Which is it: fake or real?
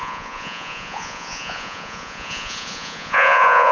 fake